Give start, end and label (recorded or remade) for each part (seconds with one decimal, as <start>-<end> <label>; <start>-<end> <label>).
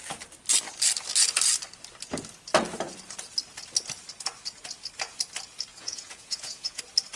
0.0-5.7 recorded; 5.7-6.8 remade; 6.8-7.2 recorded